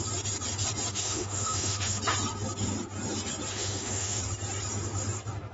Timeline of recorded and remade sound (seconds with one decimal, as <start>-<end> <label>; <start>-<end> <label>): 0.0-0.9 recorded; 0.9-2.0 remade; 2.0-3.5 recorded; 3.5-4.2 remade; 4.2-5.5 recorded